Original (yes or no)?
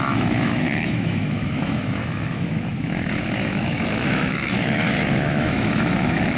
no